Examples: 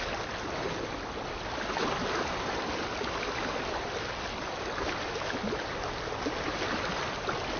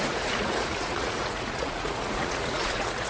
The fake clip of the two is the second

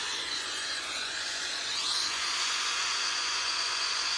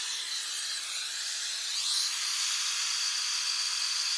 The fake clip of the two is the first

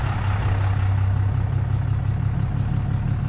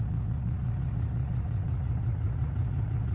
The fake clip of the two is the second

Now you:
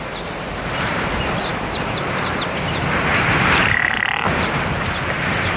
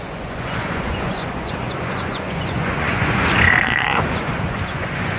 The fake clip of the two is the second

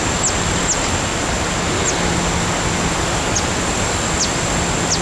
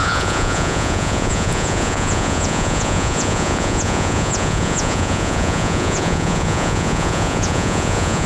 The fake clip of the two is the second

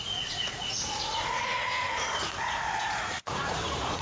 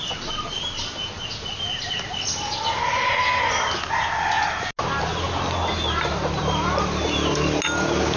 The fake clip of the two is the first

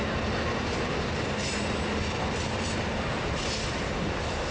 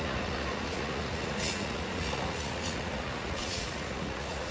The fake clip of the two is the second